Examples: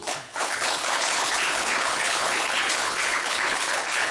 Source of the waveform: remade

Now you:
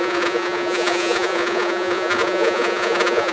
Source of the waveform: remade